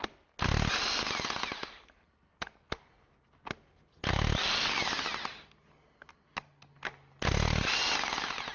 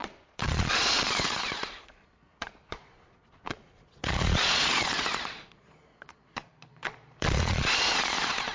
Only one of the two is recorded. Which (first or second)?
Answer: first